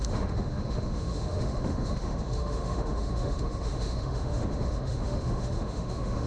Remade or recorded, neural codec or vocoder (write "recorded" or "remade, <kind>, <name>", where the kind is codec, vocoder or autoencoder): remade, autoencoder, DAC-VAE